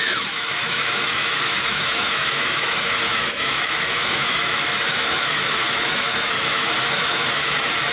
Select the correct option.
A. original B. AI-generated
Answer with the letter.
B